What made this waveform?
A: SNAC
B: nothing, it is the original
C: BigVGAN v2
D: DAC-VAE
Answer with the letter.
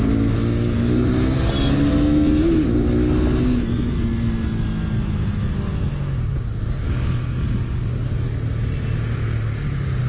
B